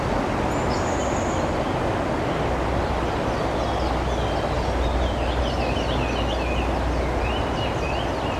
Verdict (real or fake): real